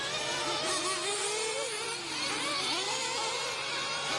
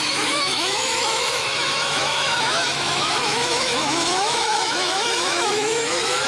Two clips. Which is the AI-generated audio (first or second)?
second